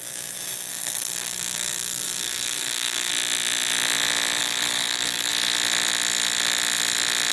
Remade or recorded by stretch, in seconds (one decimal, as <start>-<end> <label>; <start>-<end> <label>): 0.0-0.7 recorded; 0.7-3.1 remade; 3.1-4.4 recorded; 4.4-5.3 remade; 5.3-7.3 recorded